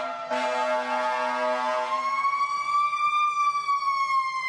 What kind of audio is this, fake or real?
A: real